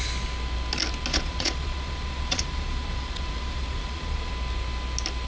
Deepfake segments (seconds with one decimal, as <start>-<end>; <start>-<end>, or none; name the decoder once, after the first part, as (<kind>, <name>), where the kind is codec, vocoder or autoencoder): 1.1-4.3 (vocoder, Vocos)

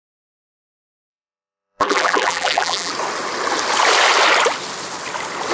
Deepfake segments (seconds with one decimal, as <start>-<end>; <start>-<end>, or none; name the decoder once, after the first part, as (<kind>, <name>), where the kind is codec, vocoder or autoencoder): 1.1-2.9 (vocoder, BigVGAN v2)

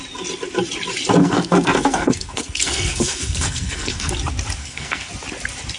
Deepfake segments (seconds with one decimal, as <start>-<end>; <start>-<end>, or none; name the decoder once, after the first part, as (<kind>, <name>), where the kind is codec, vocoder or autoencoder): 1.2-4.1 (codec, SNAC); 4.6-5.1

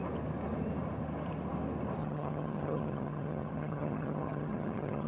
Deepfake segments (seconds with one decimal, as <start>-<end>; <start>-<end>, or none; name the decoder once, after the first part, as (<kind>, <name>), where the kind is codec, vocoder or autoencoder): 2.0-5.1 (vocoder, HiFi-GAN)

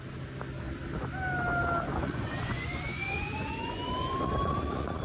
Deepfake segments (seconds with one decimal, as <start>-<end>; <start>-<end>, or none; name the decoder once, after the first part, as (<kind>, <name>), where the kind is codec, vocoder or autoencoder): 2.0-5.0 (vocoder, Vocos)

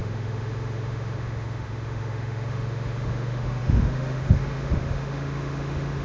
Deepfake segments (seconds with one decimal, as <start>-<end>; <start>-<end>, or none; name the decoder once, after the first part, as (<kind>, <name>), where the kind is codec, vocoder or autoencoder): 0.0-6.0 (autoencoder, DAC-VAE)

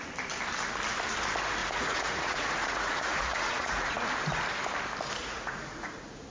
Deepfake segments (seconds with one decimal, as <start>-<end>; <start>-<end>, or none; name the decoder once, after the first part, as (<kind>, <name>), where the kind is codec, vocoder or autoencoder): 1.6-3.9 (vocoder, Vocos); 5.2-6.3

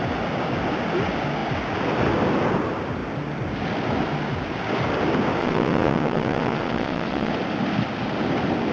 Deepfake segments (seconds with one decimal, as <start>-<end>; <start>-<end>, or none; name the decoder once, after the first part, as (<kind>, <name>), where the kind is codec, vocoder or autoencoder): 5.4-7.3 (vocoder, Vocos)